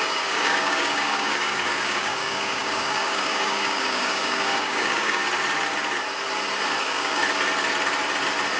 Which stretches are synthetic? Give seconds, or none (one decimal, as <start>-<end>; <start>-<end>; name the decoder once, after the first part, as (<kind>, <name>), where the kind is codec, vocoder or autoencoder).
0.0-5.2 (codec, DAC); 6.8-7.2